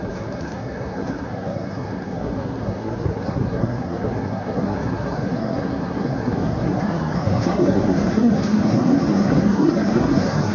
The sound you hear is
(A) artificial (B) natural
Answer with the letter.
A